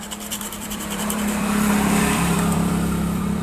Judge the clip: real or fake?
fake